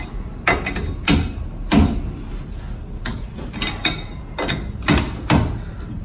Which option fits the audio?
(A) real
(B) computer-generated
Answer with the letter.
A